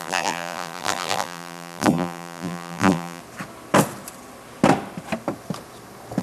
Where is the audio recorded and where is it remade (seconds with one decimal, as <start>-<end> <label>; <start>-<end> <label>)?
0.0-3.2 remade; 3.2-6.2 recorded